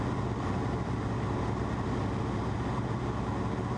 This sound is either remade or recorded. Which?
recorded